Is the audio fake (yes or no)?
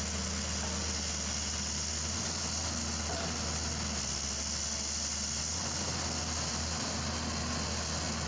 no